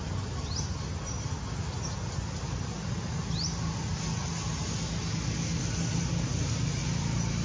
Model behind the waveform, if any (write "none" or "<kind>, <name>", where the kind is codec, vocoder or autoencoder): none